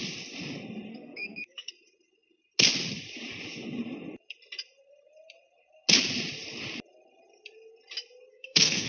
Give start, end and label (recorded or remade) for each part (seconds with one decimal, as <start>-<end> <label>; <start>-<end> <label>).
0.0-0.9 recorded; 0.9-1.7 remade; 1.7-8.3 recorded; 8.3-8.9 remade